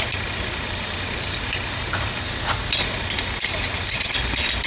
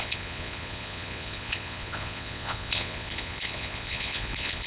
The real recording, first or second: first